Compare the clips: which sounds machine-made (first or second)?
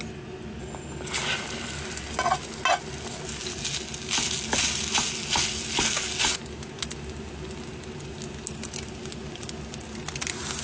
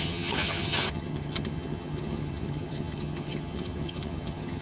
second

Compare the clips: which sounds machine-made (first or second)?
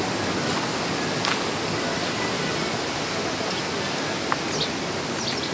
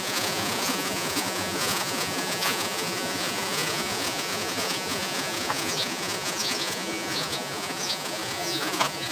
second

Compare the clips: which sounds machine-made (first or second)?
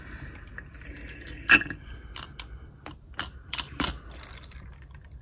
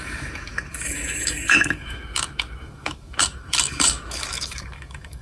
second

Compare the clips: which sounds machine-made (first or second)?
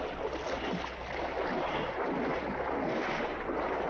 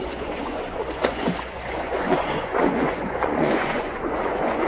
second